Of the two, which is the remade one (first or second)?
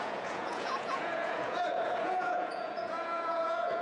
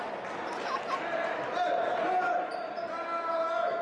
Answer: first